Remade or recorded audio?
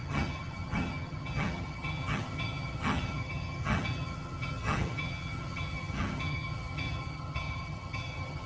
remade